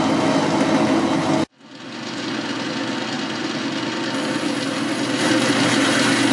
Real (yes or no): yes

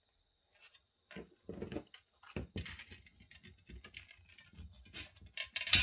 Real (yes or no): yes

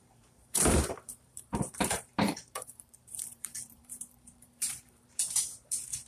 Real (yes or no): no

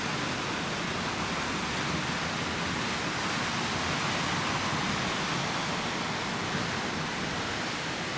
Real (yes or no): yes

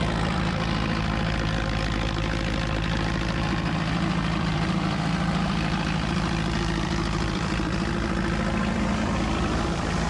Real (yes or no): no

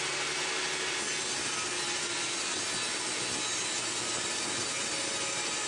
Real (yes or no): yes